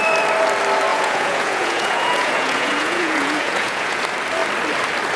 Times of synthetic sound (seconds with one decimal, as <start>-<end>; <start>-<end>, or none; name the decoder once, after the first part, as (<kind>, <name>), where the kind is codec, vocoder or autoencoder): 0.9-4.0 (vocoder, Vocos)